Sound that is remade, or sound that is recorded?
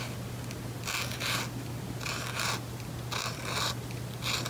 recorded